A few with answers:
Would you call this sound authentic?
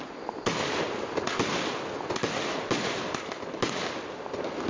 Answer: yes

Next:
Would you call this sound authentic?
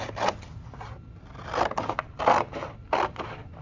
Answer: yes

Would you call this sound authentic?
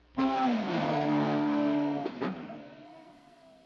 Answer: no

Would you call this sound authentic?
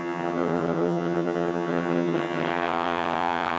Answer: no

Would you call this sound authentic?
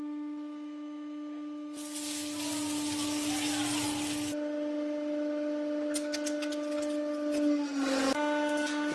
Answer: yes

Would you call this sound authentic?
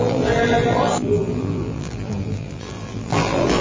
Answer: no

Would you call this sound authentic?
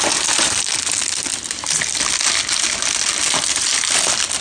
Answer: yes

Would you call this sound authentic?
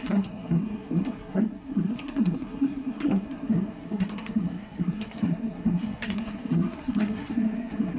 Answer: no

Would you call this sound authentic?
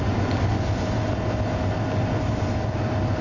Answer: yes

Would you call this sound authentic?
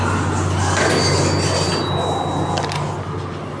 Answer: yes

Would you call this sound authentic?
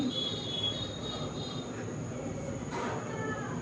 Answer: yes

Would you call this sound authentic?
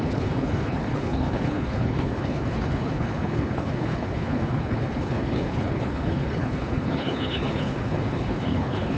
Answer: no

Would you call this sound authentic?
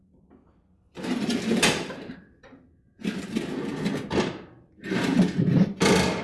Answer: no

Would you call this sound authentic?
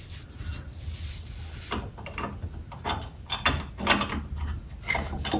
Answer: yes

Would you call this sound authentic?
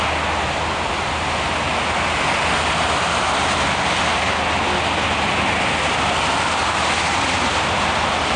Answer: yes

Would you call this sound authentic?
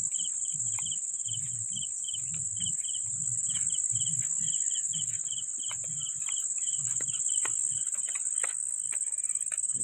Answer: yes